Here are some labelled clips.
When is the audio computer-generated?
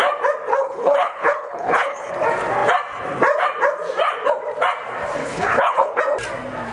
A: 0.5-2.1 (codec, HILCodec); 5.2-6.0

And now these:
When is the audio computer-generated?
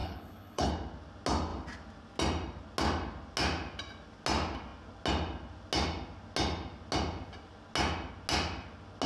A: 0.0-0.7 (codec, HILCodec)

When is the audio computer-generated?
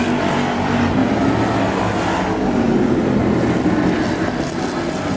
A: none